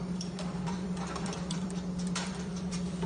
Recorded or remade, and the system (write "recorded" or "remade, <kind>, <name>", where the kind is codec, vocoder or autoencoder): remade, vocoder, BigVGAN v2